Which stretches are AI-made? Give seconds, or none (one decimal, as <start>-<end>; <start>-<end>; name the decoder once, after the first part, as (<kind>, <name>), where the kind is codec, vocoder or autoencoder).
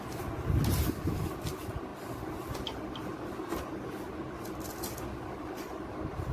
none